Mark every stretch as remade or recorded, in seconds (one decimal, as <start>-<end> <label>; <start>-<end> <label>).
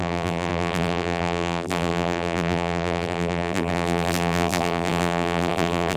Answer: 0.0-6.0 remade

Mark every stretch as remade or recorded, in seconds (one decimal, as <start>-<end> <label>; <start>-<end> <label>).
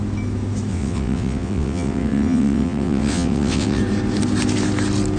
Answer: 0.0-0.7 recorded; 0.7-3.8 remade; 3.8-5.2 recorded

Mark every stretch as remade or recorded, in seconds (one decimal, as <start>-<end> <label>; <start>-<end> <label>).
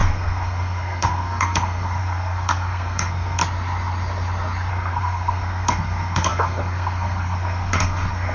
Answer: 0.0-3.4 remade; 3.4-4.7 recorded; 4.7-8.3 remade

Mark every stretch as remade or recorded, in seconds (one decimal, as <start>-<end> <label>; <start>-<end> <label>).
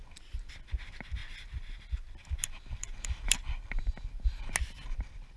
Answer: 0.0-1.2 recorded; 1.2-4.4 remade; 4.4-5.4 recorded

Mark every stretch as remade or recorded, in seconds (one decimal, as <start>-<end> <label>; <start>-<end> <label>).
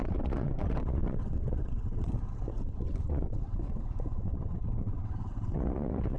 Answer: 0.0-6.2 remade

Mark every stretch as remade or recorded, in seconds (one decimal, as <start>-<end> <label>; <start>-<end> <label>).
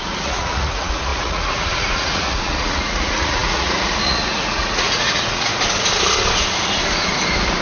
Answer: 0.0-5.5 remade; 5.5-7.6 recorded